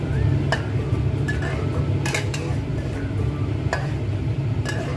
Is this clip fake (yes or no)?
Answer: no